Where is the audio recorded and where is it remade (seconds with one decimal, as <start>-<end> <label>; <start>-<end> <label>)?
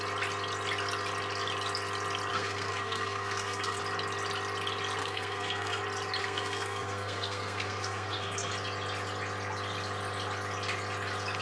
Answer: 0.0-2.3 recorded; 2.3-3.8 remade; 3.8-5.0 recorded; 5.0-5.8 remade; 5.8-6.2 recorded; 6.2-8.5 remade; 8.5-11.4 recorded